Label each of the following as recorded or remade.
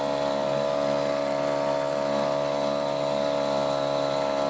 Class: recorded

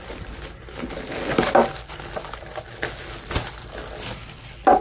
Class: recorded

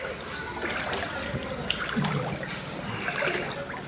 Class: recorded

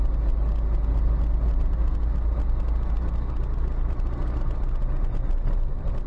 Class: recorded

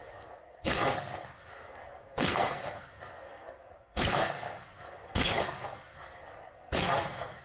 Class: remade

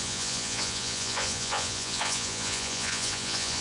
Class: remade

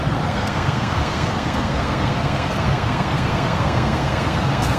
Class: remade